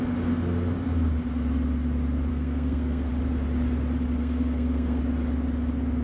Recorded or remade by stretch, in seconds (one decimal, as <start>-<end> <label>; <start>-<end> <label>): 0.0-2.3 recorded; 2.3-3.1 remade; 3.1-4.2 recorded; 4.2-5.0 remade; 5.0-6.0 recorded